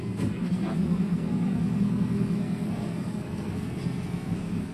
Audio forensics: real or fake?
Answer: fake